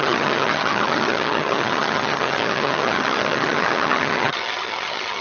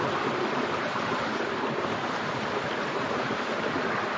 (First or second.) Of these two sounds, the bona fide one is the second